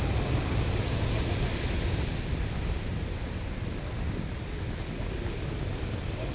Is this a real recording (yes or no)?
yes